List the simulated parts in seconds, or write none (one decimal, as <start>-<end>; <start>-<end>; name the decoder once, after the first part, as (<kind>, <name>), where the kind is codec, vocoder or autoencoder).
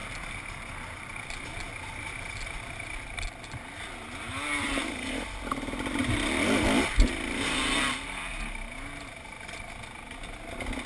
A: none